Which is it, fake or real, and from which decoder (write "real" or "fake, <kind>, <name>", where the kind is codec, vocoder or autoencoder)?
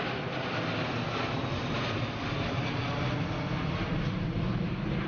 real